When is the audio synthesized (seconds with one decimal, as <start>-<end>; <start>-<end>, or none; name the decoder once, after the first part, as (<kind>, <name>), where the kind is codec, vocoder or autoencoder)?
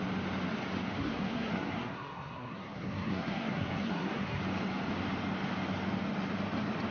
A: 1.0-4.4 (codec, SNAC)